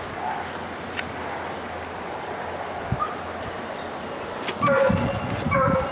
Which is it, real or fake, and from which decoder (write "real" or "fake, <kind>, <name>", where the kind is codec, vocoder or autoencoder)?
real